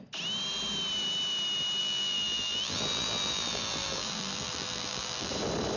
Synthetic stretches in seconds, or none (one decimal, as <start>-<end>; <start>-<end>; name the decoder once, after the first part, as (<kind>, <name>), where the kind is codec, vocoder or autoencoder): 1.8-5.3 (vocoder, BigVGAN v2)